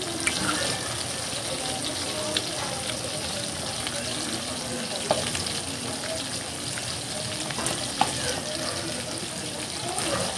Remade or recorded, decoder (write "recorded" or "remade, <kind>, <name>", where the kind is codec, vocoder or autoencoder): recorded